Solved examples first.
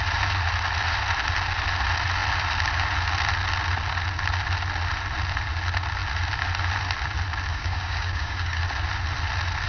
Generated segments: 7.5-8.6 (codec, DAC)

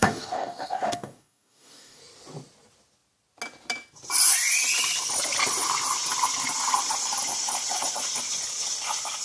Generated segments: 0.0-2.0 (codec, DAC)